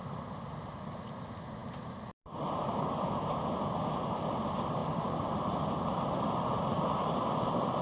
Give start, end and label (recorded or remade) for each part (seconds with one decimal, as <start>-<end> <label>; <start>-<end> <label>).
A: 0.0-7.8 recorded